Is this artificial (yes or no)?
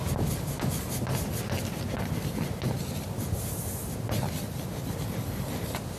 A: no